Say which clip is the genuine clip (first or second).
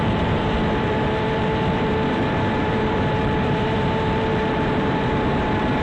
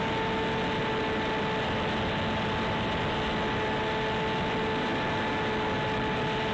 second